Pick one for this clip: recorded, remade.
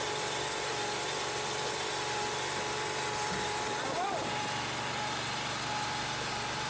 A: remade